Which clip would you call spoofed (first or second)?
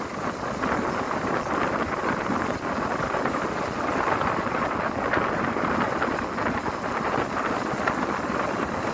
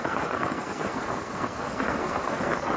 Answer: second